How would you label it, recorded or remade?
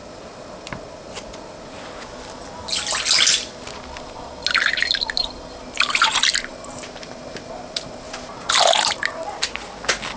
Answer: recorded